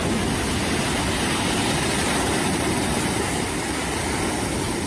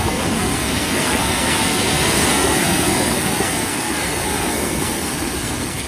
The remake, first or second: second